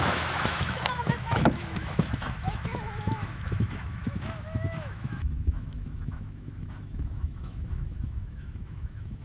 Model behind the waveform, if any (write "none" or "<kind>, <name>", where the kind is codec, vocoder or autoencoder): autoencoder, DAC-VAE